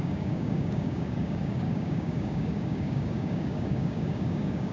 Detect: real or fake fake